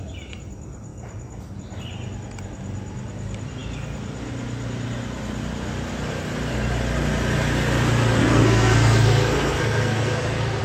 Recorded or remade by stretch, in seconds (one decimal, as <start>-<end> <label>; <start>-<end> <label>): 0.0-8.2 recorded; 8.2-10.6 remade